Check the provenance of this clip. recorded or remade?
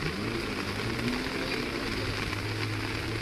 recorded